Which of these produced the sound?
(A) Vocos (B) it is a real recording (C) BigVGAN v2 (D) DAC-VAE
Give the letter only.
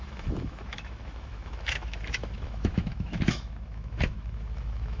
D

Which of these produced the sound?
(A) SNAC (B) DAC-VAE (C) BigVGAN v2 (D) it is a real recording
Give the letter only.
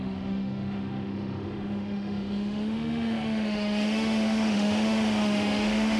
B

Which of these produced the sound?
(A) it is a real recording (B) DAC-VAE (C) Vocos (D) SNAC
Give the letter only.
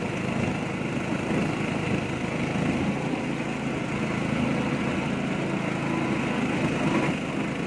A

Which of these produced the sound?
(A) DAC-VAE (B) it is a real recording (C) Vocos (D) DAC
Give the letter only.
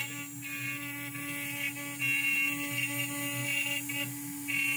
B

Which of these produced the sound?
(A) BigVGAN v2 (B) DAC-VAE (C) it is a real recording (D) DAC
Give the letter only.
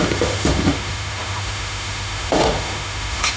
B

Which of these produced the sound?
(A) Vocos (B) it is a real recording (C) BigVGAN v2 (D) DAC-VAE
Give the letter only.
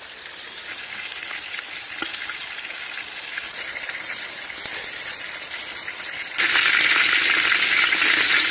B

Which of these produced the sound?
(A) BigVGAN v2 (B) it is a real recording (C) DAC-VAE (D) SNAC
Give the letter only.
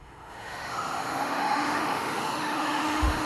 C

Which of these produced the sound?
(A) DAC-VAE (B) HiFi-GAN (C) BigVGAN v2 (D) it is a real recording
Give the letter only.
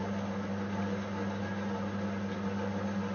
D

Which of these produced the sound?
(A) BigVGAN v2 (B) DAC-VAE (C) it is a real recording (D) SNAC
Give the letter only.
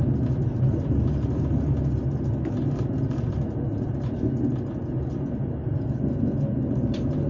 C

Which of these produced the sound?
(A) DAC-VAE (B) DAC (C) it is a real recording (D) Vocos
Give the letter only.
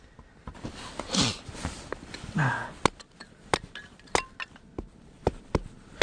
C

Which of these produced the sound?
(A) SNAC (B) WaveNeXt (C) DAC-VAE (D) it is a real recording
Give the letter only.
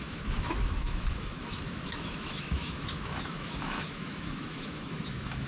C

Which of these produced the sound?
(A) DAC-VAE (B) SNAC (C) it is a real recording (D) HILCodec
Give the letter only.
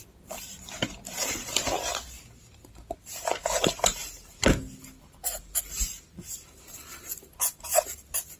C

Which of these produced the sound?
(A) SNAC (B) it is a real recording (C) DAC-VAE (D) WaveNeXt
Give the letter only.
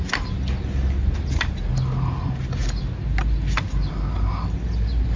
B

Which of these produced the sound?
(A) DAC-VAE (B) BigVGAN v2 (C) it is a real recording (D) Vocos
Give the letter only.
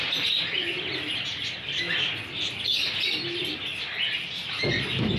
C